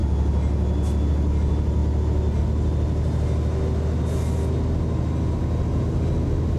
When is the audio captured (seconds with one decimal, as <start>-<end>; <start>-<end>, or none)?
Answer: 0.0-6.6